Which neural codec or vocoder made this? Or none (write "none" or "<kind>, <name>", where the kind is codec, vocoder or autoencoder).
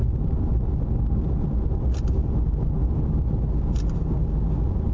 none